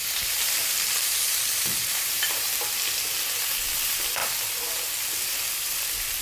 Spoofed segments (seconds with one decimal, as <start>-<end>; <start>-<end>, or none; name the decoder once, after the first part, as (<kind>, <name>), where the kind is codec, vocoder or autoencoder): 0.0-2.5 (vocoder, BigVGAN v2)